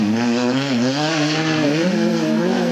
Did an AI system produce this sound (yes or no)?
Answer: yes